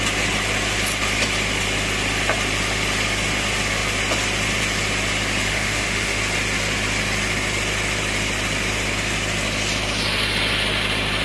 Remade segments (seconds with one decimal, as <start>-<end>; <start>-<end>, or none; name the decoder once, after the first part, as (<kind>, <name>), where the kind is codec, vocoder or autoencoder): 5.5-6.2 (autoencoder, DAC-VAE)